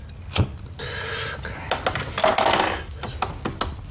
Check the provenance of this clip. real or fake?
real